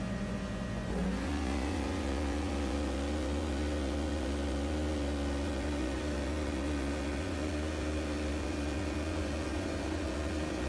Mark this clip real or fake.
fake